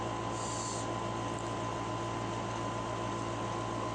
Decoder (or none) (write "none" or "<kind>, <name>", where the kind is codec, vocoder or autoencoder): none